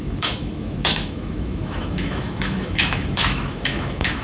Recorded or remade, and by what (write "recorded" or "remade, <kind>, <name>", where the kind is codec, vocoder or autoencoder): remade, autoencoder, DAC-VAE